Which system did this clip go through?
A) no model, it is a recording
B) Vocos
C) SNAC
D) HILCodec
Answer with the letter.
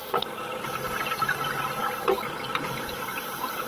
A